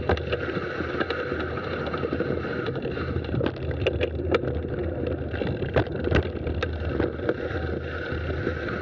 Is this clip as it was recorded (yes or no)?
yes